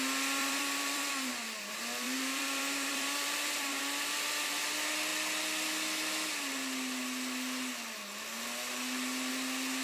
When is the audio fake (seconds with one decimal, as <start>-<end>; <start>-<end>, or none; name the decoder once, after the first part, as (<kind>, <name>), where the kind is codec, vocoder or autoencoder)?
0.4-3.8 (vocoder, BigVGAN v2)